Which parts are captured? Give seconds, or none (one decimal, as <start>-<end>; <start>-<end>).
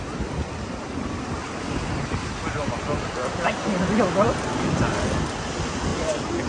0.0-6.5